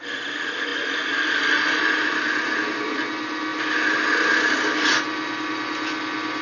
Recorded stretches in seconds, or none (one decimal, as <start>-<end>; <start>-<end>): 0.0-6.4